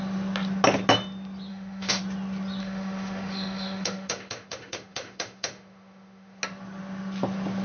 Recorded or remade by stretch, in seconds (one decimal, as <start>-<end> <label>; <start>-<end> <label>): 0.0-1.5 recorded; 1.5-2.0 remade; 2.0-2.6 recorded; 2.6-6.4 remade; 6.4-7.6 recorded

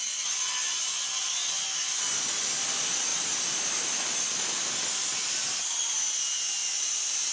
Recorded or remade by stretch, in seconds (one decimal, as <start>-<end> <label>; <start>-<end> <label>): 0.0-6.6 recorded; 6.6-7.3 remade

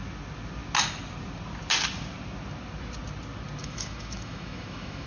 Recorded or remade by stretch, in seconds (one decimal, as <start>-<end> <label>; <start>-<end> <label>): 0.0-3.6 recorded; 3.6-5.1 remade

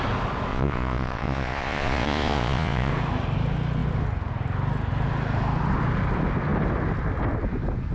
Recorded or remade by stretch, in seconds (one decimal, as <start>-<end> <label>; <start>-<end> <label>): 0.0-0.5 recorded; 0.5-2.9 remade; 2.9-7.9 recorded